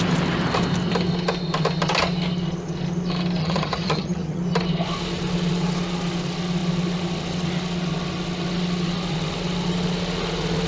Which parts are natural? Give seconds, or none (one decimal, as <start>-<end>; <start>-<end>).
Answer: 0.0-3.4; 4.4-10.7

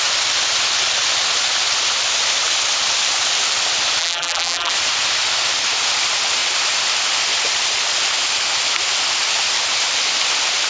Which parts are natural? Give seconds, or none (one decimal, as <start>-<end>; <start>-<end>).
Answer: 0.0-4.0; 4.7-10.7